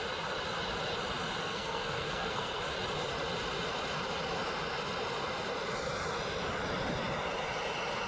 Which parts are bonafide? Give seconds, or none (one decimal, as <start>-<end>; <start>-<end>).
0.0-1.4; 2.6-8.1